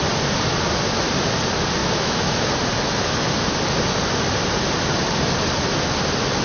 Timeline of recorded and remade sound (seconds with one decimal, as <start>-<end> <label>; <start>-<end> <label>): 0.0-1.8 recorded; 1.8-2.5 remade; 2.5-6.4 recorded